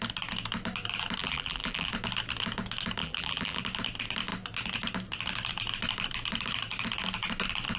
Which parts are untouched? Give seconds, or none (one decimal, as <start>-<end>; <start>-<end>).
0.0-1.2; 1.9-3.0; 3.6-7.8